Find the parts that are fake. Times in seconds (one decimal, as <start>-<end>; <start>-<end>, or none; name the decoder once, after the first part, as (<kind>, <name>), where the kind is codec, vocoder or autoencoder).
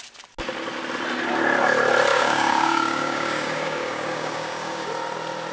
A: 2.1-4.9 (codec, DAC)